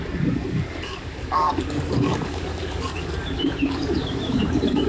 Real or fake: fake